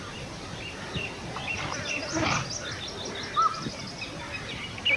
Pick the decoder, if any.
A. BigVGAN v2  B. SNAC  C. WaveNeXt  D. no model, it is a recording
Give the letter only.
D